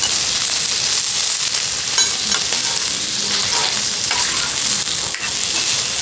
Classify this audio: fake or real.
real